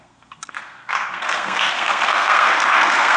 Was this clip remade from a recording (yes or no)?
yes